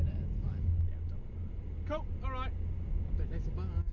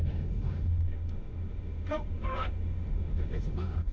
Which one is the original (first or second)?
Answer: first